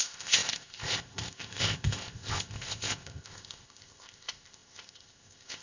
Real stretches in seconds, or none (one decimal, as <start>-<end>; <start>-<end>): none